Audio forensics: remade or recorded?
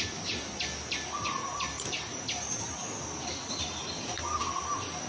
recorded